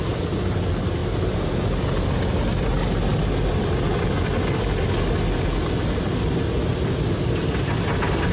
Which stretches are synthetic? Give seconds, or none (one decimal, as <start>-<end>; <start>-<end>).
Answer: none